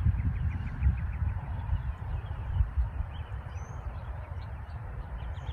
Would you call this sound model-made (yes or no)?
yes